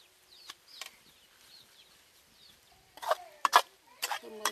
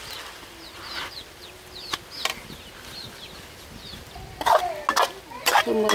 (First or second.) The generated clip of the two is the first